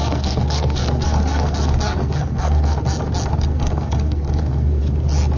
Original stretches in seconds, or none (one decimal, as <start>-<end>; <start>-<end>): 2.8-3.5; 4.8-5.4